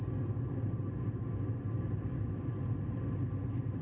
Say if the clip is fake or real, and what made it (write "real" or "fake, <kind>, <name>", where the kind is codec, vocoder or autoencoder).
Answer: real